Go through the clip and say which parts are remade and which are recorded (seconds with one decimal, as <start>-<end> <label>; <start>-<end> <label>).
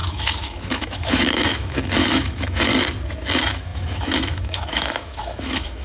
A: 0.0-2.7 remade; 2.7-3.3 recorded; 3.3-5.8 remade